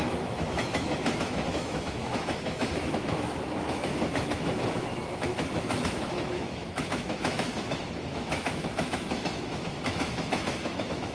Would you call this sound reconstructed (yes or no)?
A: yes